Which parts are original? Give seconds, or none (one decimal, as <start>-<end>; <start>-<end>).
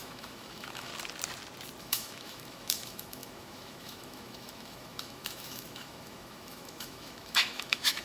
0.9-1.8